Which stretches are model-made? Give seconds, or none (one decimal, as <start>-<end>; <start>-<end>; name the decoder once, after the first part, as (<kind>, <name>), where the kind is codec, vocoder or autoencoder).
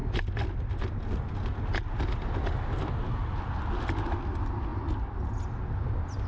none